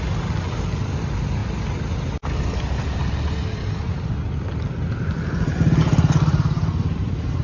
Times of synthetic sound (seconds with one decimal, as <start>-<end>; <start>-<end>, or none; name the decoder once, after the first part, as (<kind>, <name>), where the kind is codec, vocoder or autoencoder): none